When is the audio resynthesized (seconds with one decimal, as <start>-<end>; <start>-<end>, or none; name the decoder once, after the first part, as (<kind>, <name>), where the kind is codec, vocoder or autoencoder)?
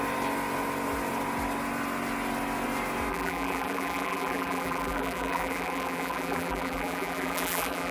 3.1-7.9 (vocoder, BigVGAN v2)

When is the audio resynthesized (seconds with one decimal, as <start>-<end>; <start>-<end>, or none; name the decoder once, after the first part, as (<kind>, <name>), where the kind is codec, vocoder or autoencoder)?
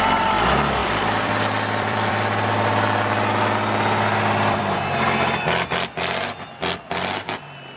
0.8-4.8 (vocoder, BigVGAN v2)